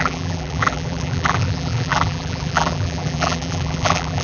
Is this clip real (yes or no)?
no